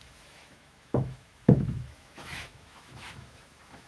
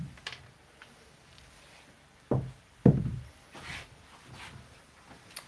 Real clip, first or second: second